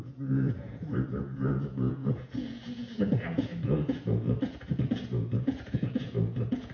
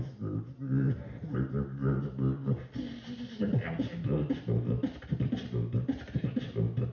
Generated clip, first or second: first